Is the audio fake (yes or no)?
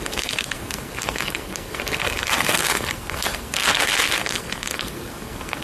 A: yes